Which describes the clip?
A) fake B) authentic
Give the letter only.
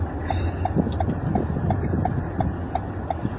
B